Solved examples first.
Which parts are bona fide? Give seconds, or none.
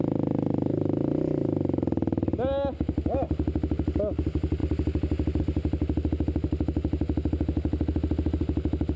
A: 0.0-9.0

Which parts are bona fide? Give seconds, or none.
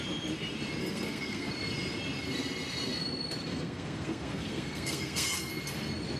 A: 0.0-0.8; 1.5-3.5; 5.5-6.2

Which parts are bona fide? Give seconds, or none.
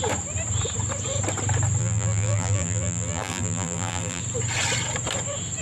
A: 0.0-1.8; 4.2-5.6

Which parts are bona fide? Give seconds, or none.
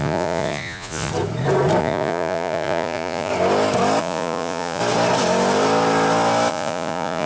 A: 1.1-1.8; 3.3-4.0; 4.8-6.5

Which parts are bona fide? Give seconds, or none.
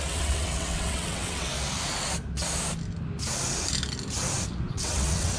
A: 1.5-4.7